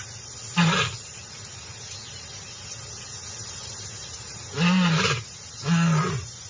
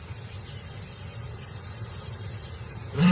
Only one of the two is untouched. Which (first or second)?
first